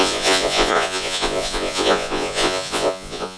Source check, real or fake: fake